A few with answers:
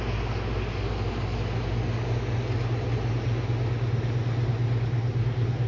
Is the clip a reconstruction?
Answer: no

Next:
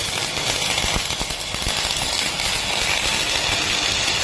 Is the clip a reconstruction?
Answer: no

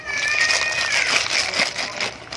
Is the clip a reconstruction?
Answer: no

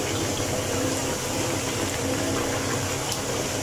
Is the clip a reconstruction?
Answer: no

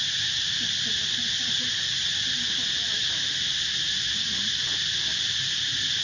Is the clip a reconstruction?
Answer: no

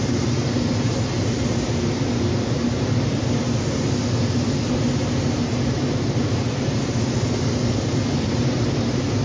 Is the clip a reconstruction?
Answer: no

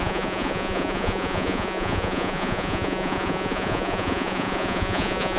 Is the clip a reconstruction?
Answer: yes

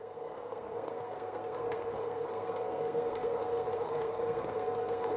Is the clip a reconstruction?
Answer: yes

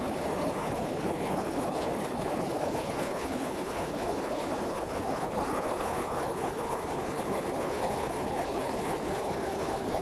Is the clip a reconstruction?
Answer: yes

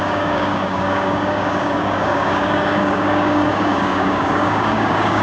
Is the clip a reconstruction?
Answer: yes